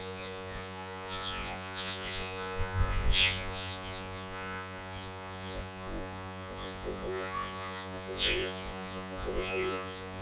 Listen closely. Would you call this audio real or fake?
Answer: fake